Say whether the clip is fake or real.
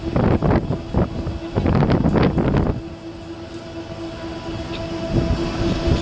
real